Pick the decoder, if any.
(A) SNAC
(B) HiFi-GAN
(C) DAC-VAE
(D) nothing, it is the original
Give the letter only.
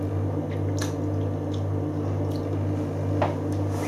D